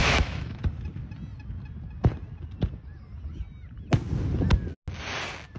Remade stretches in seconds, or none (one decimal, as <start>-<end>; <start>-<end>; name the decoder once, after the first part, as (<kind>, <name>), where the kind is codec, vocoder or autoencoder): 0.0-0.6 (autoencoder, DAC-VAE)